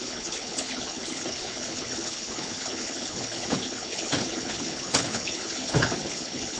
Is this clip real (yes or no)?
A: no